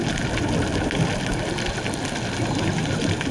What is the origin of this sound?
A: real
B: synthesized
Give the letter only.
A